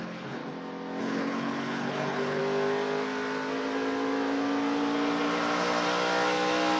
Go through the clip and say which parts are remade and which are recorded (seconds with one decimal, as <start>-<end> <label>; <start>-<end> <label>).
0.0-0.4 remade; 0.4-1.0 recorded; 1.0-2.4 remade; 2.4-6.8 recorded